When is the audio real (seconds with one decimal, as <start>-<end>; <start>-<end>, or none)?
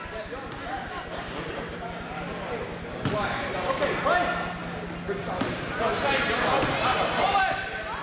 0.0-1.7; 3.3-5.2; 7.6-8.0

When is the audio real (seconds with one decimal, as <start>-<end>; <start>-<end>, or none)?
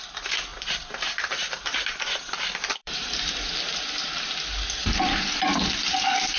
0.0-0.5; 3.7-4.8; 5.6-6.4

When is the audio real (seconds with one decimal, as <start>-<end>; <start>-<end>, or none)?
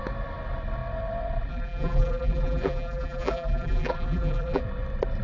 0.0-1.5; 4.6-5.2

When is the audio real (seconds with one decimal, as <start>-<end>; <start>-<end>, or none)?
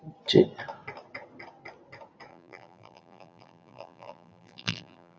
0.0-2.3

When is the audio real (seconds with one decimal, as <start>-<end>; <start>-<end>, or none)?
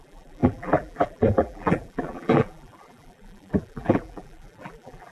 none